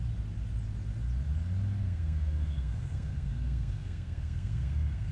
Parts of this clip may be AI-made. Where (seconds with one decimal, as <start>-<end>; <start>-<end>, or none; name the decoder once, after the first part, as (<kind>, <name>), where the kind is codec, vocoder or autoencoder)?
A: 1.8-5.1 (codec, SNAC)